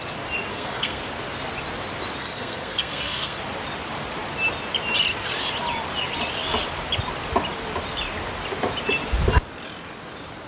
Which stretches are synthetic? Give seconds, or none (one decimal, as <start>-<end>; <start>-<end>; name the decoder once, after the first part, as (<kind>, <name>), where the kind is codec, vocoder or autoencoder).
0.5-1.0 (codec, SNAC); 2.2-3.4